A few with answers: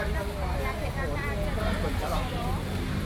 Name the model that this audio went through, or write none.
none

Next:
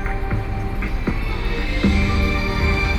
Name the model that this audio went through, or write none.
none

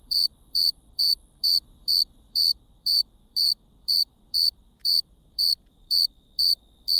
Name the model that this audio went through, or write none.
vocoder, BigVGAN v2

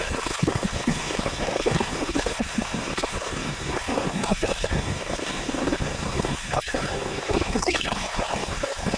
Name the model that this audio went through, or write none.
codec, SNAC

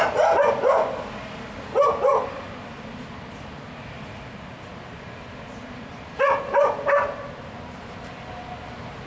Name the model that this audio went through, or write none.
none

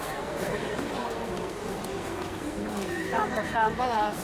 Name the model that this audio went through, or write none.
codec, SNAC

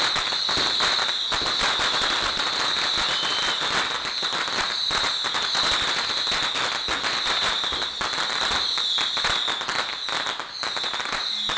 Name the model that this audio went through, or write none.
none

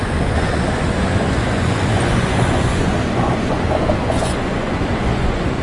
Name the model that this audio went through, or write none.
vocoder, Vocos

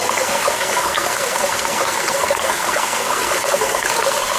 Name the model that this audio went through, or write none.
codec, SNAC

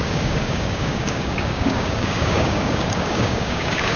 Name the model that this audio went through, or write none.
codec, DAC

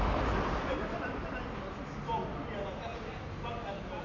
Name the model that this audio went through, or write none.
none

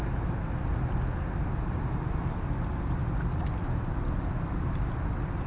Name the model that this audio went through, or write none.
none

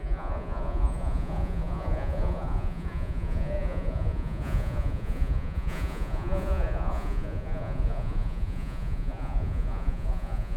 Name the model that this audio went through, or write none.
vocoder, Vocos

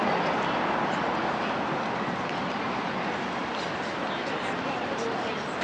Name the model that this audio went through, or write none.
none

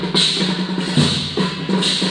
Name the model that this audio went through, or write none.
none